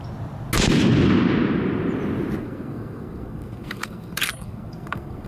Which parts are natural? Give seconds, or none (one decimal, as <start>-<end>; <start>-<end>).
0.0-2.4